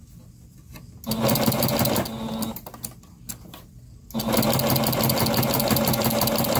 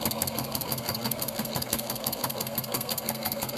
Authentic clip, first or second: first